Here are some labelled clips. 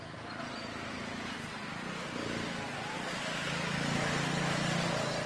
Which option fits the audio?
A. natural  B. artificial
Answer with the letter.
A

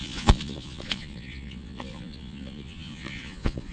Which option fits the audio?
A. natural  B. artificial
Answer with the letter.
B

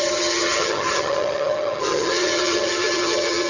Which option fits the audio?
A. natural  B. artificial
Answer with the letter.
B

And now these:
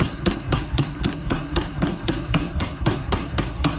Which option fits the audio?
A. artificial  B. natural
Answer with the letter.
A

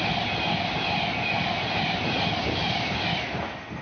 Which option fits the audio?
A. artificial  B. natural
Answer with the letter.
B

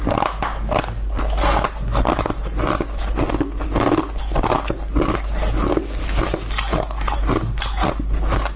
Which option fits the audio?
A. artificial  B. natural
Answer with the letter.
B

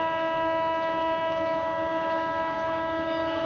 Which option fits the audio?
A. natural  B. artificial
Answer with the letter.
B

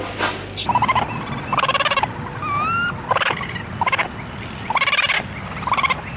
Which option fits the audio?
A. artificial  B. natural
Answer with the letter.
B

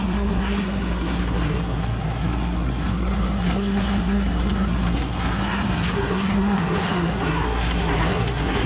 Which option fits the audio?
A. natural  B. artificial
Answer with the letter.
B